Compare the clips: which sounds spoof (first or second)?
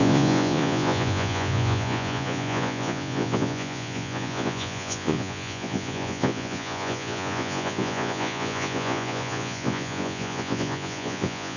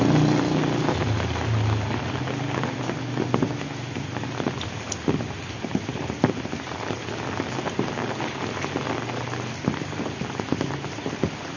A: first